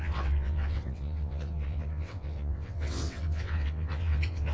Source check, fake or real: fake